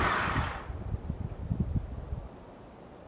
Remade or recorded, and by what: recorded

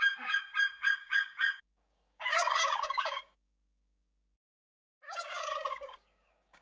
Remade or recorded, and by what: remade, codec, DAC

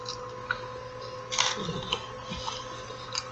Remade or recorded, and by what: recorded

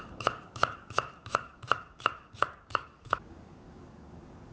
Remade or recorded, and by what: remade, codec, DAC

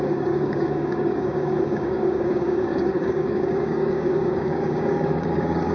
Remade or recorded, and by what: remade, codec, DAC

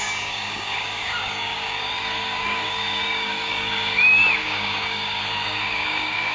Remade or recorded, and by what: remade, codec, DAC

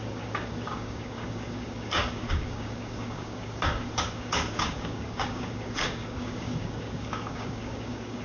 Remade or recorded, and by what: remade, codec, DAC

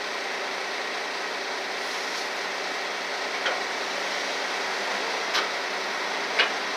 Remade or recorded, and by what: recorded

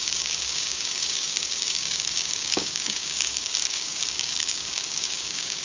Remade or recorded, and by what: remade, codec, DAC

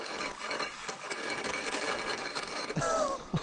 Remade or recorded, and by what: remade, codec, DAC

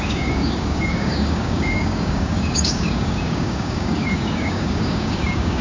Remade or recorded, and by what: remade, codec, DAC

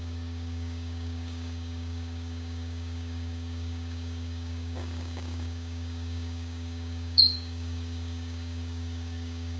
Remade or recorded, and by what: remade, codec, DAC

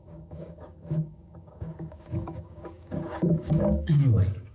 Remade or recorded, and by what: remade, codec, DAC